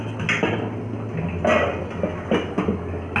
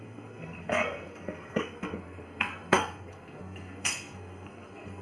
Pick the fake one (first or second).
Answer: second